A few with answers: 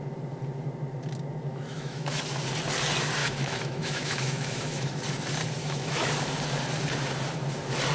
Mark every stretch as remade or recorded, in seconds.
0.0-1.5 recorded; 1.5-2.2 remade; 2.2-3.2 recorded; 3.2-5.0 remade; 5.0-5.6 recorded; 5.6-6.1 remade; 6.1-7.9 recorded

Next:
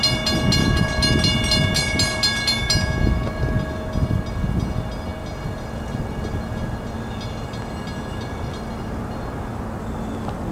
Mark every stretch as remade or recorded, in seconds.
0.0-10.5 recorded

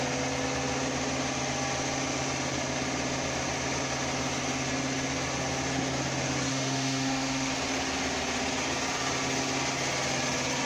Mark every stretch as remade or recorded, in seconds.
0.0-6.5 recorded; 6.5-7.5 remade; 7.5-10.7 recorded

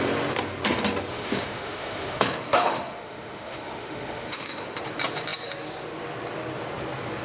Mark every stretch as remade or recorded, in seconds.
0.0-1.1 recorded; 1.1-4.8 remade; 4.8-7.2 recorded

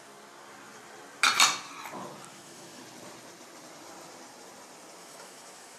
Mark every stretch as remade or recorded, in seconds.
0.0-2.3 recorded; 2.3-2.8 remade; 2.8-5.0 recorded; 5.0-5.8 remade